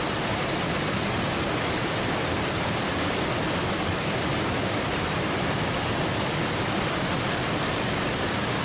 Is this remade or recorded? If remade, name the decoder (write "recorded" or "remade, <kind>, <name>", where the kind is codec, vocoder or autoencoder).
recorded